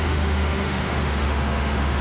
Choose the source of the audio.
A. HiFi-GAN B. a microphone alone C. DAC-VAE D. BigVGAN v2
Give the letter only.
C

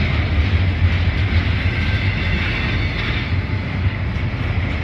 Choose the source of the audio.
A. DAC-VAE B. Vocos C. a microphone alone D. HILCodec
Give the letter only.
C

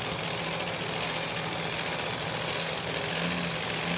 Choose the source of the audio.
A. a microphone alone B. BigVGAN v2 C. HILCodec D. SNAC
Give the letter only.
A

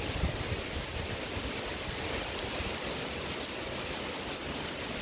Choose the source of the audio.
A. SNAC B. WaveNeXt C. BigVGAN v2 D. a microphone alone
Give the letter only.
D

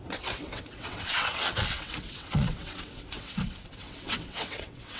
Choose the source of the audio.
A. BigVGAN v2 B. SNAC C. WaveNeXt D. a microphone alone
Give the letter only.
C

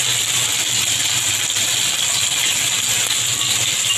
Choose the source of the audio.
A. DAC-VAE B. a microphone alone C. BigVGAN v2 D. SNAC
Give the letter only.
B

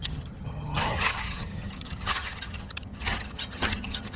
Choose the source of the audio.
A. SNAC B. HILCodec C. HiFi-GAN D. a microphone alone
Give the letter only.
C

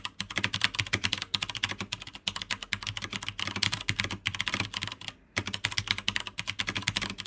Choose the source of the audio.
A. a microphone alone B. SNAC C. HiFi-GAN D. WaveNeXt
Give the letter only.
A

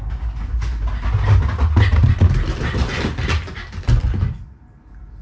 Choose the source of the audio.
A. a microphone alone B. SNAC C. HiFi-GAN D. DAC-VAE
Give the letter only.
A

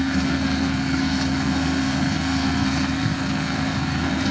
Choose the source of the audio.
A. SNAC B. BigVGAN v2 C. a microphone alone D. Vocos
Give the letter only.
A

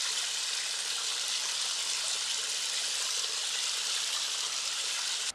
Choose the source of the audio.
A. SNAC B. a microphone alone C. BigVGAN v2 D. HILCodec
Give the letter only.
B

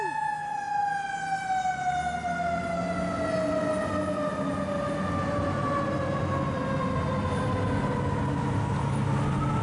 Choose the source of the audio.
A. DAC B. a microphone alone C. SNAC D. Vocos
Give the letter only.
B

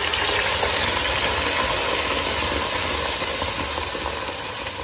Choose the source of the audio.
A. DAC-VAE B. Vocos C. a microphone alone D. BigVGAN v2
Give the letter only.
C